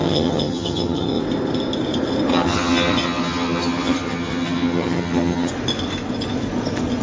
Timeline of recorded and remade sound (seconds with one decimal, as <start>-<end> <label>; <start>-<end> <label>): 0.0-1.2 remade; 1.2-2.3 recorded; 2.3-5.5 remade; 5.5-7.0 recorded